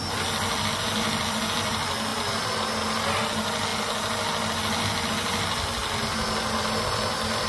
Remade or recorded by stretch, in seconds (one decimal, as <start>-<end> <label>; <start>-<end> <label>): 0.0-7.5 recorded